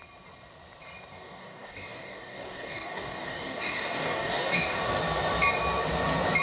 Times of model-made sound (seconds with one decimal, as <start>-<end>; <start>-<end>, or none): 1.1-4.9